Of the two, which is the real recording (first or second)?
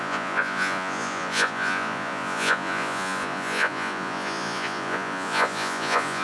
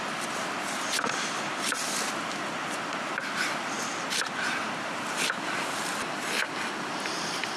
second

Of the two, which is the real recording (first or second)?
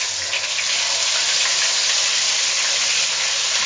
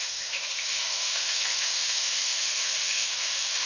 first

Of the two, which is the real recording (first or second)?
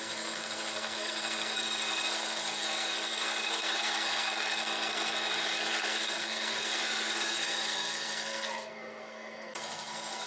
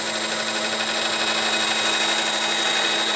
second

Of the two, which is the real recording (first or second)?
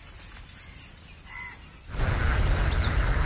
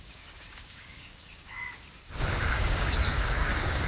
first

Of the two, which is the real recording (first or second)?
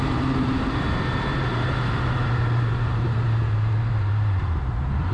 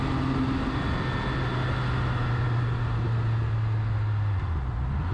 second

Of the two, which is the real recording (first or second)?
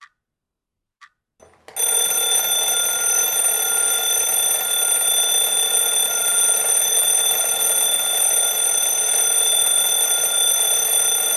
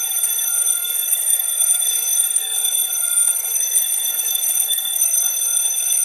first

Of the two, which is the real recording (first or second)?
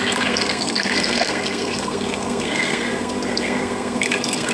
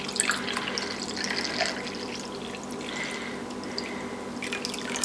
second